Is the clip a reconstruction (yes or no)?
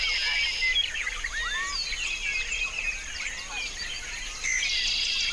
no